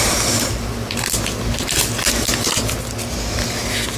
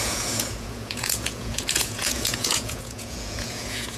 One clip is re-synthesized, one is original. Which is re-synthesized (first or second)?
second